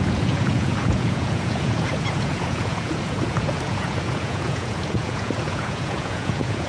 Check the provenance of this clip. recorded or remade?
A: remade